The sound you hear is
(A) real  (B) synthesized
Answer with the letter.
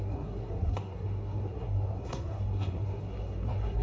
B